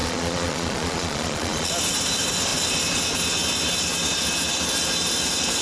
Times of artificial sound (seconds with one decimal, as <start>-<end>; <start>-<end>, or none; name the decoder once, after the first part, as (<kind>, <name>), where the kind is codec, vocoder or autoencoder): 0.0-1.7 (vocoder, Vocos)